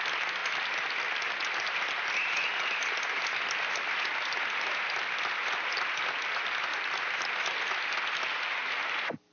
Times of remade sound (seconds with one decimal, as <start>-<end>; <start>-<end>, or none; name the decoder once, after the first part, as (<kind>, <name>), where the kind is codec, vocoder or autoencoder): none